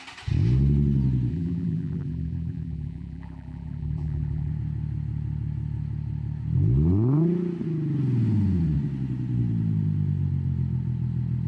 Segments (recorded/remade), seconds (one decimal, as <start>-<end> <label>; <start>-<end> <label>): 0.0-1.3 recorded; 1.3-4.5 remade; 4.5-11.5 recorded

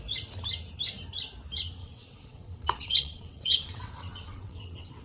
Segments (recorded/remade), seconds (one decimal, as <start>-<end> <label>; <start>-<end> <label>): 0.0-1.8 recorded; 1.8-5.0 remade

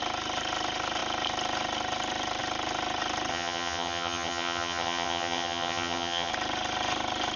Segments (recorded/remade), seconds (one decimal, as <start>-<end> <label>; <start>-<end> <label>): 0.0-3.3 recorded; 3.3-6.3 remade; 6.3-7.4 recorded

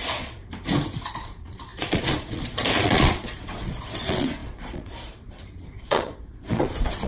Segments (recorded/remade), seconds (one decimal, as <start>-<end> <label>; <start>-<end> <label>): 0.0-0.4 remade; 0.4-1.1 recorded; 1.1-7.1 remade

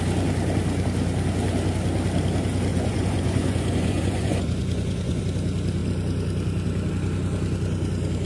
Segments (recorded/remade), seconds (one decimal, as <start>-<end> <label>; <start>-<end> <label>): 0.0-2.7 recorded; 2.7-5.2 remade; 5.2-8.3 recorded

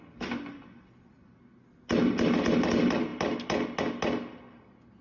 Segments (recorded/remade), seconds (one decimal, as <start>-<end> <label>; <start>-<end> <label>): 0.0-5.0 recorded

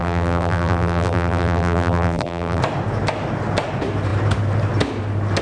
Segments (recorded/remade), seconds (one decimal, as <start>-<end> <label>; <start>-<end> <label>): 0.0-2.6 remade; 2.6-5.4 recorded

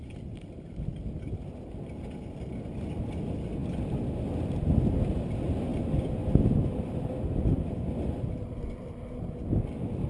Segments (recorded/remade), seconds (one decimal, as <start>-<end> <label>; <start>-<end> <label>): 0.0-10.1 recorded